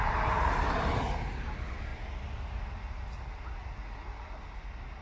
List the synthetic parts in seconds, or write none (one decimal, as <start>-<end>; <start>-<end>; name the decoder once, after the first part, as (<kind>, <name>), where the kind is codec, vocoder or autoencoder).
none